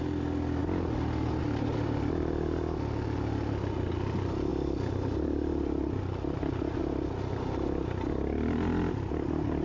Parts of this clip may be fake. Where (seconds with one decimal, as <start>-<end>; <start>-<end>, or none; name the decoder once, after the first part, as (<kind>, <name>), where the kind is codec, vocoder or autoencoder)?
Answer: none